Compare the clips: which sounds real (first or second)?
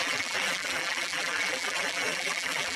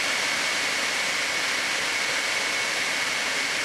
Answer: second